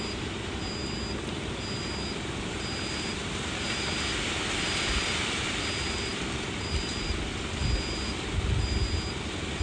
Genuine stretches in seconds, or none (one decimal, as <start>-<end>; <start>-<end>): 0.0-9.6